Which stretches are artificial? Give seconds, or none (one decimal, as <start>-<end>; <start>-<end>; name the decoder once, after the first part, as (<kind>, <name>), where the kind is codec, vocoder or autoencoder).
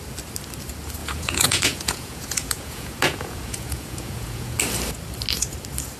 1.0-4.6 (vocoder, Vocos)